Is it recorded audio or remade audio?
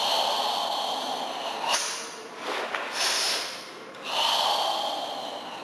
recorded